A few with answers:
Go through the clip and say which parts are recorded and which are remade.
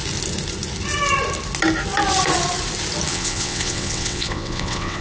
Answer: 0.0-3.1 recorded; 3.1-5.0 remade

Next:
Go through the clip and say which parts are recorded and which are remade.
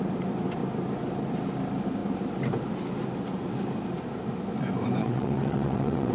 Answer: 0.0-5.0 recorded; 5.0-6.1 remade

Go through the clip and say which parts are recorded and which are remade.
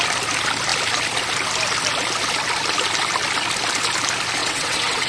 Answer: 0.0-4.4 recorded; 4.4-5.1 remade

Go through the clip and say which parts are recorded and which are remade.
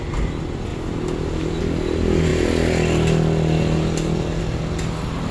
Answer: 0.0-5.3 recorded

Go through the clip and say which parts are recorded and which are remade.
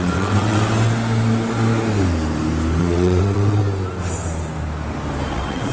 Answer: 0.0-0.6 remade; 0.6-2.8 recorded; 2.8-3.6 remade; 3.6-5.3 recorded; 5.3-5.7 remade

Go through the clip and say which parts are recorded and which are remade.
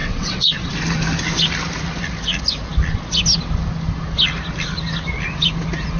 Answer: 0.0-0.7 remade; 0.7-6.0 recorded